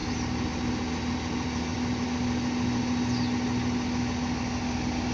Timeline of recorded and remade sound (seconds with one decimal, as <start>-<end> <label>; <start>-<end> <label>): 0.0-5.1 recorded